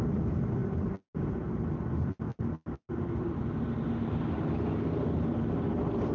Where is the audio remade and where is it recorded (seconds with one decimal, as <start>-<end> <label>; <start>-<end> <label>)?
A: 0.0-6.1 recorded